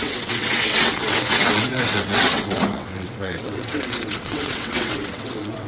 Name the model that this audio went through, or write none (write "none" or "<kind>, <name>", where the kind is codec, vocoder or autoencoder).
vocoder, WaveNeXt